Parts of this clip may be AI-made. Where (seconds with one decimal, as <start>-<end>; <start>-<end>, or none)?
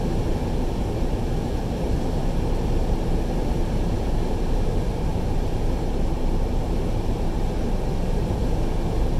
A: 0.0-8.4